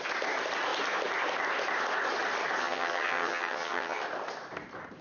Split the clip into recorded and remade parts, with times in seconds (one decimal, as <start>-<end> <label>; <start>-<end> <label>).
0.0-2.6 recorded; 2.6-4.0 remade; 4.0-5.0 recorded